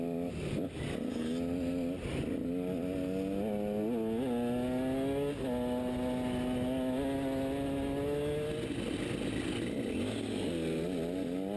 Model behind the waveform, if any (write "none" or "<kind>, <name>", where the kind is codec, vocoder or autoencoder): none